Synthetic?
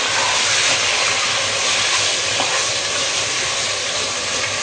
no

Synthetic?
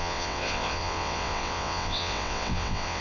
yes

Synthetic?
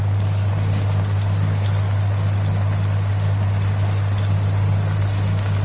no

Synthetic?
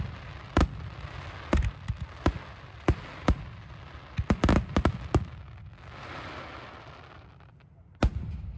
no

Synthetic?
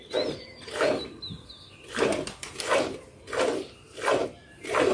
no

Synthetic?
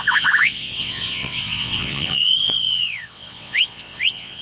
yes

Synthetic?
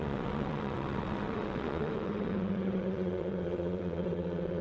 yes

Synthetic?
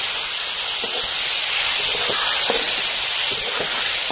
no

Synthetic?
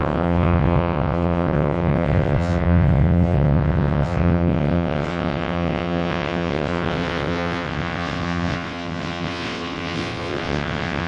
yes